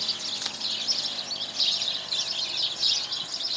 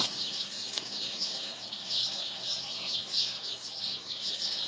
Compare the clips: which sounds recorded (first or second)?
first